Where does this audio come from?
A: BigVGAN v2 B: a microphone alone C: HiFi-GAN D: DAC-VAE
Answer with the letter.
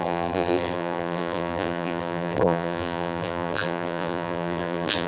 A